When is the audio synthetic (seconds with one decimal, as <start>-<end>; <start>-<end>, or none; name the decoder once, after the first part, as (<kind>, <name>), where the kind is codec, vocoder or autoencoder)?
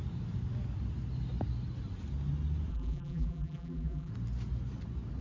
2.7-4.1 (vocoder, BigVGAN v2)